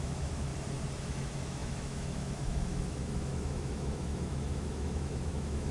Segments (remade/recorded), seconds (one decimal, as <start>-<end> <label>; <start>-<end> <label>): 0.0-0.5 remade; 0.5-1.0 recorded; 1.0-5.7 remade